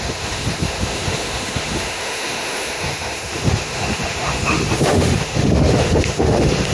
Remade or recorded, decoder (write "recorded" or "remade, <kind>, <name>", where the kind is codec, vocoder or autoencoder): remade, autoencoder, DAC-VAE